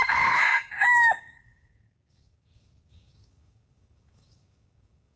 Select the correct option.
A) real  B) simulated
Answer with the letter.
B